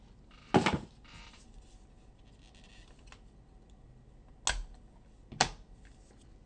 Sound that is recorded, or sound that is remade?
recorded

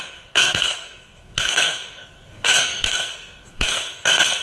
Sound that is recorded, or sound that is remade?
remade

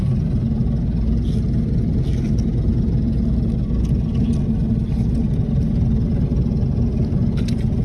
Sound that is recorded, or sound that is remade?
recorded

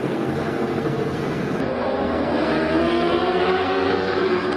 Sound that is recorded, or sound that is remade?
remade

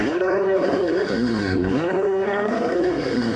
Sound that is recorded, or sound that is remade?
remade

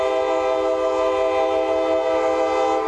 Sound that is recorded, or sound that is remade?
recorded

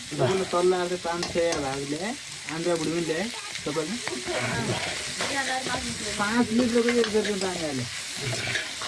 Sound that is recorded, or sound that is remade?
recorded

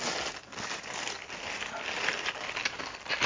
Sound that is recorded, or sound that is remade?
recorded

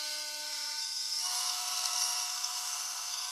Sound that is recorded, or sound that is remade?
remade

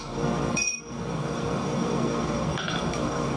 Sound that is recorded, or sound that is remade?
remade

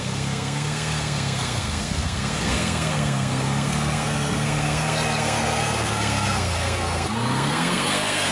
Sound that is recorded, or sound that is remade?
remade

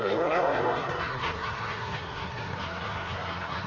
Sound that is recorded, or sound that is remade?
remade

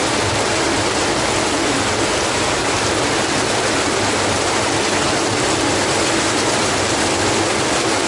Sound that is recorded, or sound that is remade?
recorded